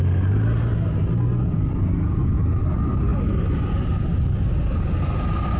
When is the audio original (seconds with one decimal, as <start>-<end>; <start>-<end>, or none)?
0.0-5.6